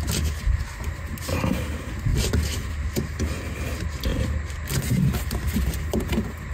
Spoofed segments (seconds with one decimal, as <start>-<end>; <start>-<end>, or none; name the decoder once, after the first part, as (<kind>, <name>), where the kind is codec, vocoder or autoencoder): none